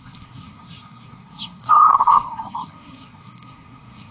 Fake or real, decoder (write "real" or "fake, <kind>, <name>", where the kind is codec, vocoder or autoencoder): fake, codec, SNAC